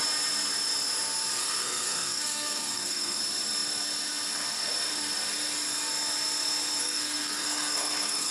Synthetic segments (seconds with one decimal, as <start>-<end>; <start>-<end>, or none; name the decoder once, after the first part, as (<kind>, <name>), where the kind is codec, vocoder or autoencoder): 1.4-3.2 (codec, SNAC); 6.8-8.3